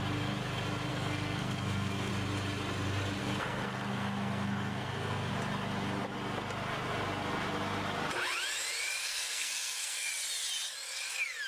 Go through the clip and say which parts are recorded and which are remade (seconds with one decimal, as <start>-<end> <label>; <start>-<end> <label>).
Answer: 0.0-0.9 recorded; 0.9-2.1 remade; 2.1-3.2 recorded; 3.2-5.3 remade; 5.3-9.0 recorded; 9.0-10.1 remade; 10.1-11.5 recorded